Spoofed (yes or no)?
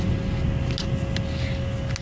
no